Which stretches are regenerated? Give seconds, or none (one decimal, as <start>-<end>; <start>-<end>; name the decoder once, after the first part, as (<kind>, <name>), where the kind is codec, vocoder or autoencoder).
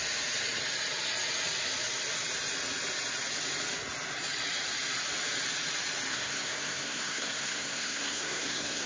6.1-8.9 (codec, SNAC)